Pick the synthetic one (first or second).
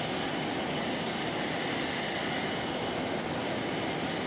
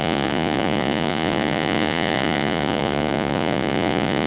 second